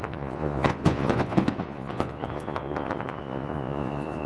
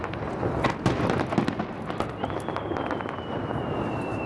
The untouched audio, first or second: second